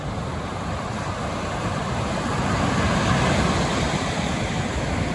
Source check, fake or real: real